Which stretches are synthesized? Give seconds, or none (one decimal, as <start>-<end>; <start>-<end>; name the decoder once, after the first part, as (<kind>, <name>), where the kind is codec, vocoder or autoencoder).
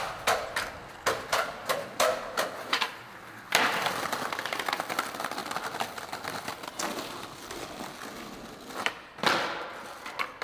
none